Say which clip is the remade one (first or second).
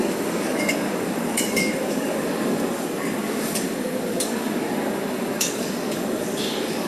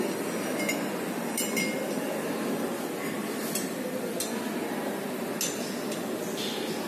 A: first